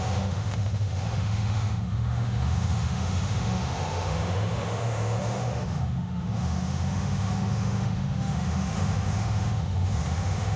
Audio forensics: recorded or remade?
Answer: remade